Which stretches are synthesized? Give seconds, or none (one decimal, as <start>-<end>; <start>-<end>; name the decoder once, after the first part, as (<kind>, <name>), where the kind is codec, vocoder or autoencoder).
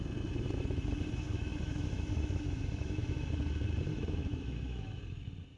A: 1.3-3.3 (autoencoder, DAC-VAE); 3.9-5.0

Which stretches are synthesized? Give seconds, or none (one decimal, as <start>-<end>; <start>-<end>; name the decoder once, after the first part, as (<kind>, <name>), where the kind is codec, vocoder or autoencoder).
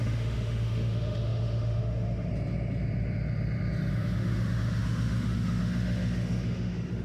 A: 0.0-2.3 (autoencoder, DAC-VAE); 3.9-7.0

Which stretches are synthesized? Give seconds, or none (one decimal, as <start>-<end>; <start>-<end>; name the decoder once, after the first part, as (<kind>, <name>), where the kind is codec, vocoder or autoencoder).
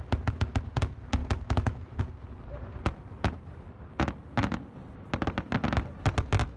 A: 1.2-2.0 (autoencoder, DAC-VAE)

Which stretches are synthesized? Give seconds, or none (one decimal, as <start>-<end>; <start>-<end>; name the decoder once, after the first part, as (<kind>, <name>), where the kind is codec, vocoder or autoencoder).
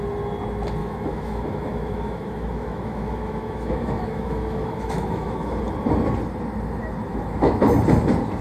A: 0.8-5.6 (autoencoder, DAC-VAE); 7.1-7.6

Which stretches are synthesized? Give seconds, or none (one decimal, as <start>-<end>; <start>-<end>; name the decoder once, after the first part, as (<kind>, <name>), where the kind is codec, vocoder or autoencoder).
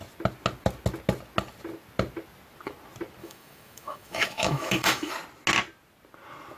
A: 3.2-5.1 (autoencoder, DAC-VAE)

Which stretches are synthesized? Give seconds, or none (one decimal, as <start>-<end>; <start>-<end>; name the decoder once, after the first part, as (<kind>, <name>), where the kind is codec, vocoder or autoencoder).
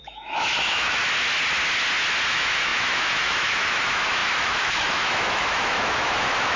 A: 0.0-1.0 (autoencoder, DAC-VAE); 2.3-6.6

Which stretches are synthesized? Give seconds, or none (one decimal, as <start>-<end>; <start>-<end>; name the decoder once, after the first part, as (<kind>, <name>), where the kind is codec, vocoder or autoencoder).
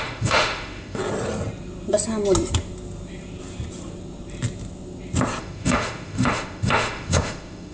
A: 0.0-1.0 (autoencoder, DAC-VAE); 5.4-7.7